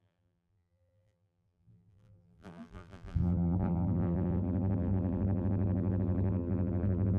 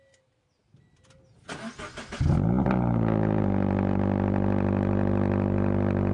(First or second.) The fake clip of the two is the first